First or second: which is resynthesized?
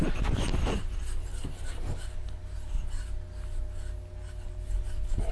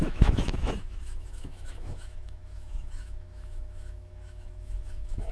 second